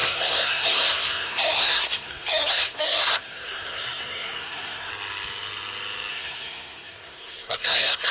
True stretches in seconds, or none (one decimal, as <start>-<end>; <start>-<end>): 4.9-6.1